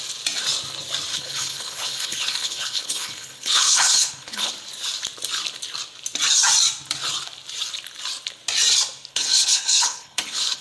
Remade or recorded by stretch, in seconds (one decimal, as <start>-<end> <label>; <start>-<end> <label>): 0.0-1.1 recorded; 1.1-4.5 remade; 4.5-9.1 recorded; 9.1-10.6 remade